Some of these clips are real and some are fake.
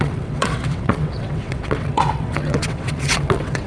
fake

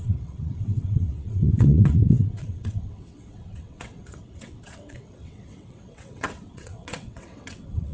fake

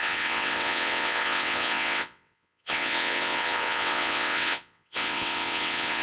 fake